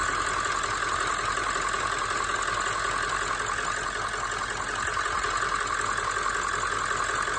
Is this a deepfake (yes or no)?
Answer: no